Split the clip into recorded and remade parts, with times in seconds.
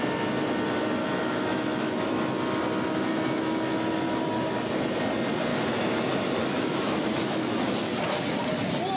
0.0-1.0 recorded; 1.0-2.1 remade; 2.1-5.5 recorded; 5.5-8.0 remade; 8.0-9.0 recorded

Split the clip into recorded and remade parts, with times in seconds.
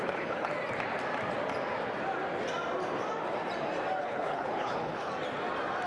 0.0-0.5 remade; 0.5-4.0 recorded; 4.0-5.1 remade; 5.1-5.9 recorded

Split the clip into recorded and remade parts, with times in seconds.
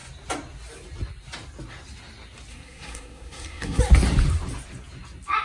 0.0-2.5 recorded; 2.5-3.8 remade; 3.8-5.4 recorded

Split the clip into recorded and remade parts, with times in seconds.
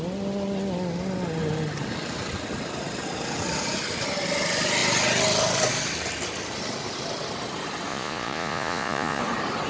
0.0-7.9 recorded; 7.9-9.2 remade; 9.2-9.7 recorded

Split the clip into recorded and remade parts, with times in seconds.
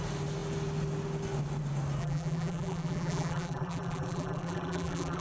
0.0-2.0 recorded; 2.0-5.2 remade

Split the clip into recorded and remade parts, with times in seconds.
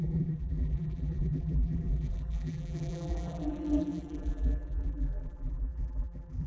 0.0-6.5 remade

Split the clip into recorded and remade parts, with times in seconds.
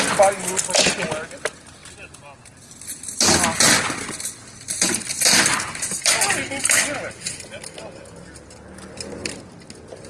0.0-10.1 recorded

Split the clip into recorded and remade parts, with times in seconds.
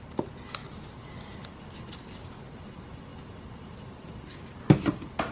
0.0-5.3 recorded